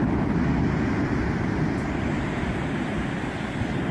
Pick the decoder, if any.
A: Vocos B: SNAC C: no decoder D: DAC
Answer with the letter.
C